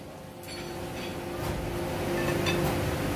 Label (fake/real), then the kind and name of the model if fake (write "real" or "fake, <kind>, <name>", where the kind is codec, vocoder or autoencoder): real